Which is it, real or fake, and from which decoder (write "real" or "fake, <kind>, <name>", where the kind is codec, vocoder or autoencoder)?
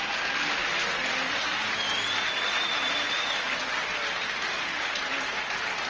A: real